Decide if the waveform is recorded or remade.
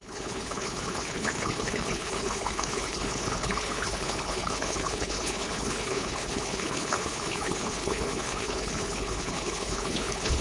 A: remade